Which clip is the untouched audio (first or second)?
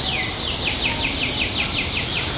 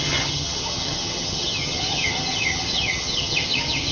first